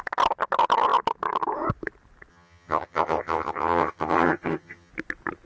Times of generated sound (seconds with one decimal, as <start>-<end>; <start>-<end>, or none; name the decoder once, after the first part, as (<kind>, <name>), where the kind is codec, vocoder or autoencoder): 2.3-4.9 (vocoder, HiFi-GAN)